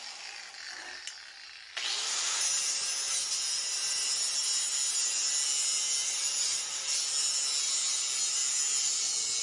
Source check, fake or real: real